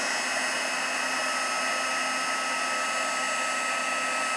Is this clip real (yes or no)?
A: yes